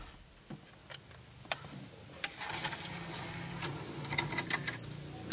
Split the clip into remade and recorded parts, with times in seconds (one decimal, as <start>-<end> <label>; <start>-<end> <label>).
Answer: 0.0-5.3 recorded